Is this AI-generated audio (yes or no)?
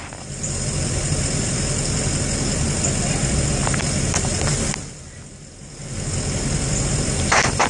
yes